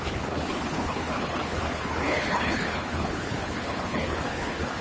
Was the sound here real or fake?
fake